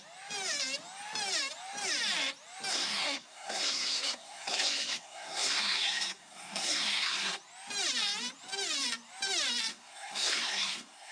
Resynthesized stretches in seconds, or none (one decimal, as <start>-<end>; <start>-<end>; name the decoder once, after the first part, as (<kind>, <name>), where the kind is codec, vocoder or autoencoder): 2.7-7.4 (codec, SNAC); 9.7-11.1